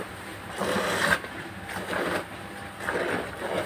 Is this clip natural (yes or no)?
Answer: yes